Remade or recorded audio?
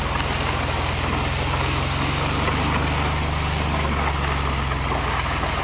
recorded